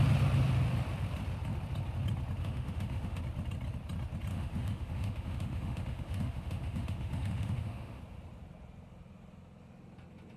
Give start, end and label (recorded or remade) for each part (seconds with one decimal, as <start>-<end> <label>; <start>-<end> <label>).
0.0-2.4 recorded; 2.4-3.2 remade; 3.2-4.3 recorded; 4.3-8.0 remade; 8.0-10.4 recorded